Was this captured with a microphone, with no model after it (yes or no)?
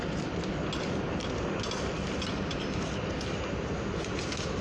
yes